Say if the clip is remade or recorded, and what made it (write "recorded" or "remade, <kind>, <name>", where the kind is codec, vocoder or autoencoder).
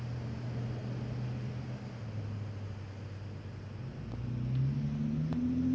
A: recorded